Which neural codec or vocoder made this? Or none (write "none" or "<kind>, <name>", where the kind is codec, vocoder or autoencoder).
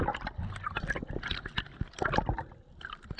none